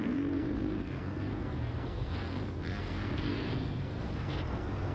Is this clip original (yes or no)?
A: no